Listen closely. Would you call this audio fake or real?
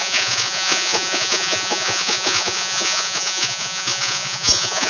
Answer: fake